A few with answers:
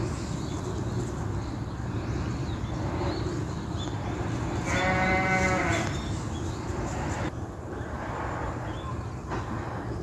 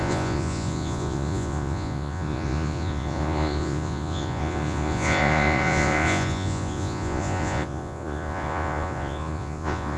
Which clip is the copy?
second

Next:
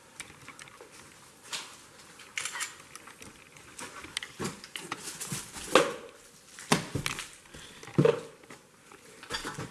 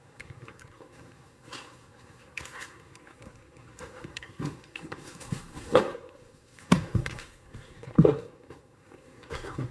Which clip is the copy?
second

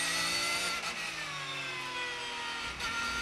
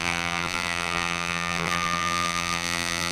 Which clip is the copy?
second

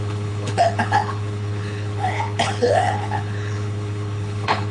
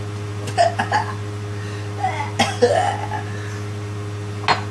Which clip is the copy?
first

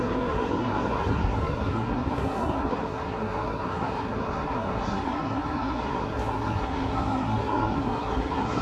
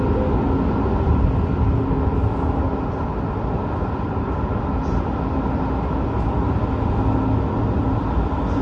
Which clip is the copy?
first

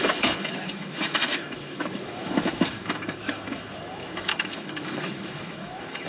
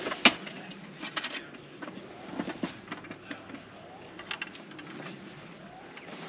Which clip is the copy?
first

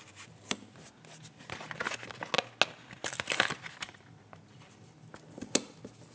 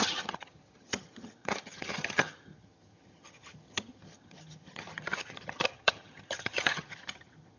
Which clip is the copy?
second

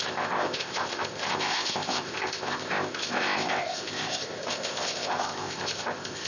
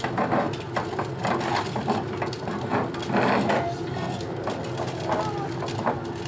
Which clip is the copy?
first